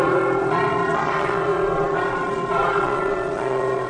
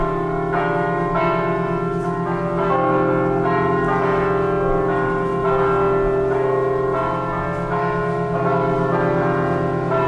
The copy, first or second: first